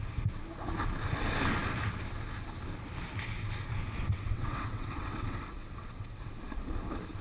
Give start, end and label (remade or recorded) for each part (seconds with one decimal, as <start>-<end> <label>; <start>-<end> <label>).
0.0-4.1 recorded; 4.1-6.3 remade; 6.3-7.2 recorded